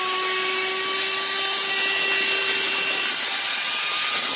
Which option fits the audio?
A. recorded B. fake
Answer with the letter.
A